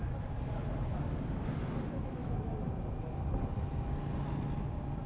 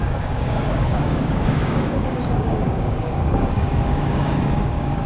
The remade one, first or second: second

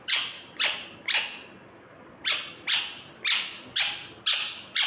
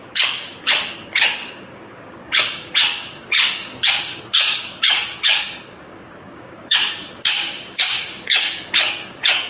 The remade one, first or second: second